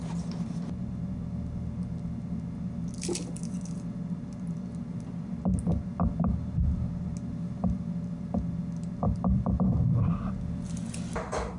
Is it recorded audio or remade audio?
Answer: recorded